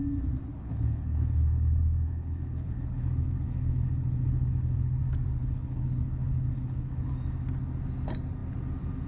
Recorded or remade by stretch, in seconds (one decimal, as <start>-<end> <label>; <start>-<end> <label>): 0.0-0.5 recorded; 0.5-5.0 remade; 5.0-5.4 recorded; 5.4-7.1 remade; 7.1-9.1 recorded